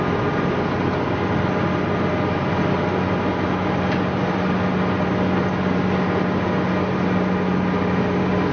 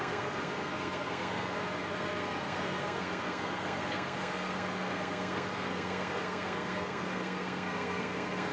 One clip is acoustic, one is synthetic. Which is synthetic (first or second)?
second